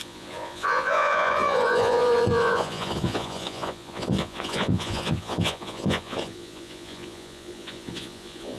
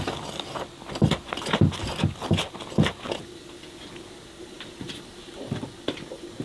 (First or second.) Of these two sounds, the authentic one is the second